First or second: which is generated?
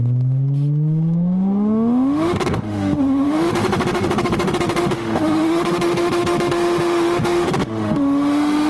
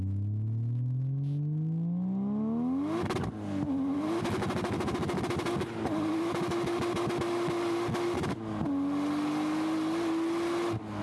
first